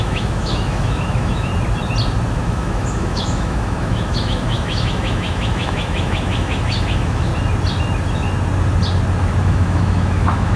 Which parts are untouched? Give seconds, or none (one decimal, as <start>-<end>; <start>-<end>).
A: 1.5-2.3; 7.3-9.4